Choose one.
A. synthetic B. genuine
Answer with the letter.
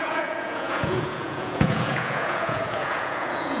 A